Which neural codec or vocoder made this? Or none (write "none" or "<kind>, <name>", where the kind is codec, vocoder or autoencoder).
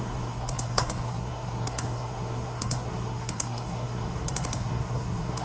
codec, SNAC